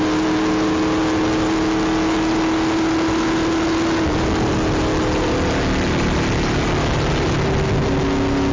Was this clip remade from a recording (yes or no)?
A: no